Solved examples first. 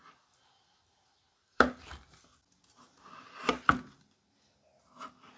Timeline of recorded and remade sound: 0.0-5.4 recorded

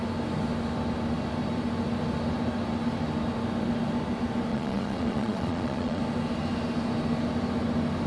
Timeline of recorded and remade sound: 0.0-4.5 recorded; 4.5-6.0 remade; 6.0-8.1 recorded

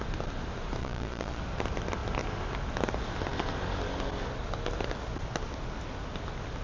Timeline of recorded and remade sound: 0.0-0.8 recorded; 0.8-1.4 remade; 1.4-6.6 recorded